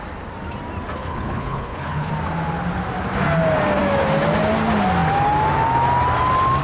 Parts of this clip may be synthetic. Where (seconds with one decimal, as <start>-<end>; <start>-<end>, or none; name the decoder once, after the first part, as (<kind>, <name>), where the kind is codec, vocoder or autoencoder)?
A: 1.0-2.1 (codec, HILCodec)